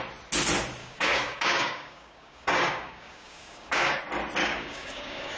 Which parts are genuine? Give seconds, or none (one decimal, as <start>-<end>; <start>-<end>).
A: 0.0-0.8; 4.0-4.4